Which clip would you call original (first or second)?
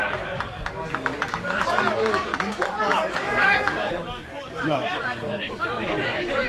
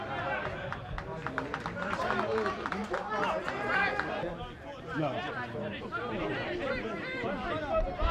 second